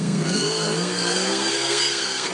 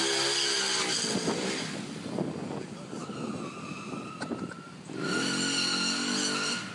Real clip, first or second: second